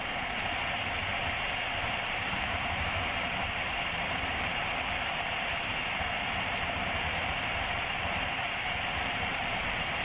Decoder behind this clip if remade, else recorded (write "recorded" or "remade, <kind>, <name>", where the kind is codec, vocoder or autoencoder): remade, vocoder, BigVGAN v2